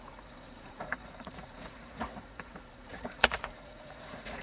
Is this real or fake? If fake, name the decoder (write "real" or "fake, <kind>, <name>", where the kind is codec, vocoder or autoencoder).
fake, vocoder, Vocos